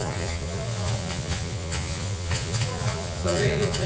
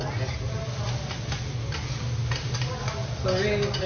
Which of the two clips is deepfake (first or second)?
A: first